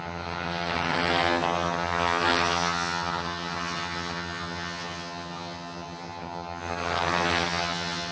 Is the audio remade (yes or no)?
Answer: yes